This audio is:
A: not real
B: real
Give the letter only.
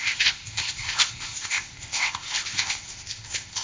A